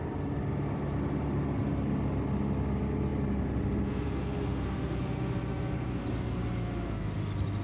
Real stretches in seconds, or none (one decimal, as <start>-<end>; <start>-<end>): 0.0-7.6